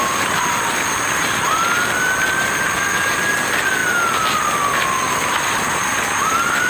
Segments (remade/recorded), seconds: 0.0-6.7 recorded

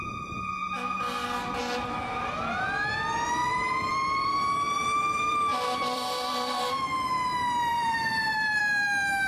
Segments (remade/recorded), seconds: 0.0-3.4 recorded; 3.4-6.8 remade; 6.8-7.7 recorded; 7.7-8.6 remade; 8.6-9.3 recorded

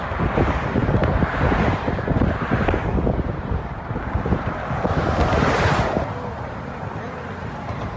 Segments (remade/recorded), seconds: 0.0-1.0 recorded; 1.0-4.1 remade; 4.1-4.6 recorded; 4.6-5.9 remade; 5.9-8.0 recorded